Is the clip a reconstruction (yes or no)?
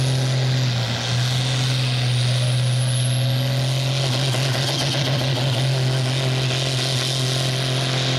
no